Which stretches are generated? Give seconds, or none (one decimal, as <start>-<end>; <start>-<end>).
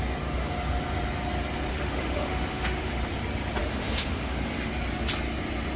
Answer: 1.7-2.9; 3.6-4.7